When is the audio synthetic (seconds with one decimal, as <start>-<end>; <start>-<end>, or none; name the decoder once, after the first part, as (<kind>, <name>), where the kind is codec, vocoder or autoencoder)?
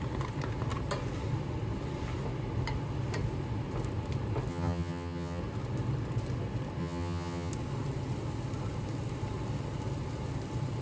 4.5-5.4 (vocoder, HiFi-GAN); 6.8-7.5